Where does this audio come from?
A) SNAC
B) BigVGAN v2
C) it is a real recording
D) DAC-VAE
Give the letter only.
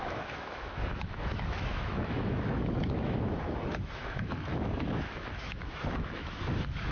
D